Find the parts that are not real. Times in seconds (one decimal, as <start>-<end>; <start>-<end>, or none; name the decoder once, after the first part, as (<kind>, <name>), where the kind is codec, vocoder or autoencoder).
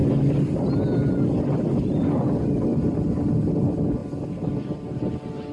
0.0-3.3 (vocoder, BigVGAN v2); 4.0-4.9